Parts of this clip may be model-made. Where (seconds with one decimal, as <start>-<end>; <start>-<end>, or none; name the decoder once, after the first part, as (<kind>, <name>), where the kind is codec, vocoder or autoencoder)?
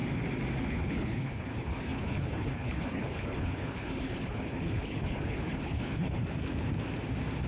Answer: 0.7-6.2 (codec, HILCodec)